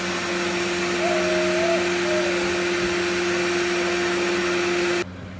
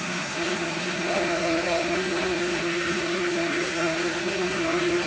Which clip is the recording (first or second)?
first